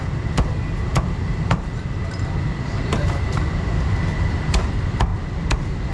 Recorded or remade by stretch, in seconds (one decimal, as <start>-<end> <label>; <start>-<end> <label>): 0.0-5.1 remade; 5.1-5.9 recorded